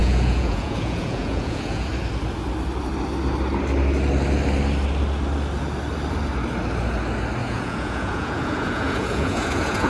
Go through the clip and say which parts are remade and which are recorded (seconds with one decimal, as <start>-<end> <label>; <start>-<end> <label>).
0.0-1.9 remade; 1.9-7.4 recorded; 7.4-9.9 remade